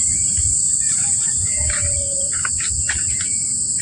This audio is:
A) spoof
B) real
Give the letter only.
B